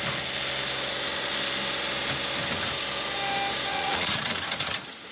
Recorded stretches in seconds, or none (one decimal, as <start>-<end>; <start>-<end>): 0.0-3.7